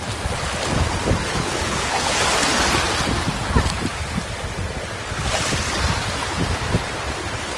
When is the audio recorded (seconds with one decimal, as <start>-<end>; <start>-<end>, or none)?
0.0-1.2; 2.2-7.6